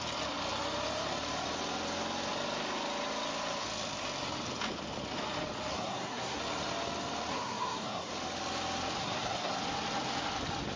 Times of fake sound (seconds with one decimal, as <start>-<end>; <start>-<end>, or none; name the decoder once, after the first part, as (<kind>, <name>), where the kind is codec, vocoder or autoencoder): 5.7-6.4 (codec, SNAC); 7.3-8.1; 9.0-9.6